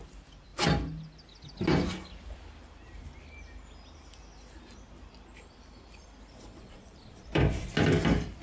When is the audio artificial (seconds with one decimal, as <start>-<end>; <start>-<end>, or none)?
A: 0.5-1.4; 5.3-7.7